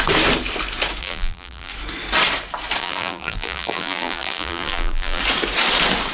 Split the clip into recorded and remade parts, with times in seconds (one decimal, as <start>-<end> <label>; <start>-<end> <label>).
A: 0.0-1.0 recorded; 1.0-1.7 remade; 1.7-2.8 recorded; 2.8-5.2 remade; 5.2-6.1 recorded